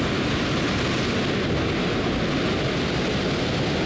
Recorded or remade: recorded